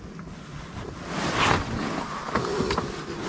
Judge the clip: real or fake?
real